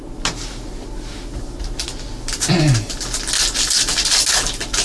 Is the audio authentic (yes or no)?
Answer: yes